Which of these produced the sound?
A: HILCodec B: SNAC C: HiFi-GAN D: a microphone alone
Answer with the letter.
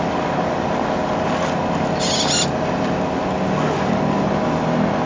D